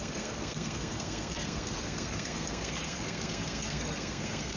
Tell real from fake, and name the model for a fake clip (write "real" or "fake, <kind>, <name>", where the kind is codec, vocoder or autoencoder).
fake, codec, SNAC